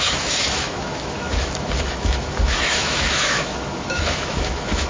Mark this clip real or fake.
fake